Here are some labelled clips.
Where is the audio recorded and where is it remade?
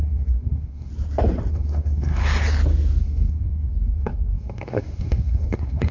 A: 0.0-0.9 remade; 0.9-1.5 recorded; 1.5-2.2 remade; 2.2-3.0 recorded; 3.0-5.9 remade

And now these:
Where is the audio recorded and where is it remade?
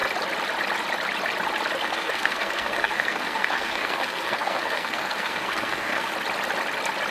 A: 0.0-1.8 recorded; 1.8-6.1 remade; 6.1-7.1 recorded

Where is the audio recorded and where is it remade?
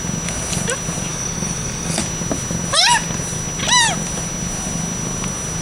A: 0.0-1.1 recorded; 1.1-2.0 remade; 2.0-5.6 recorded